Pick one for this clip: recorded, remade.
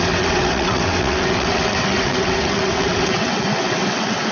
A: remade